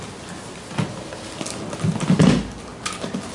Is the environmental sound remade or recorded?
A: recorded